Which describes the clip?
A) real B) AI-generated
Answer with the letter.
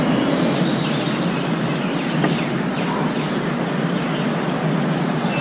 A